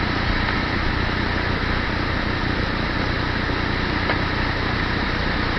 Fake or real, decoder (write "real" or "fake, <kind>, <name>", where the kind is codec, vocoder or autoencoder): real